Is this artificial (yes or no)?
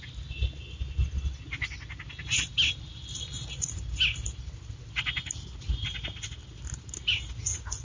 no